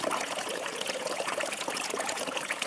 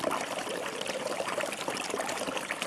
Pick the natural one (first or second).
second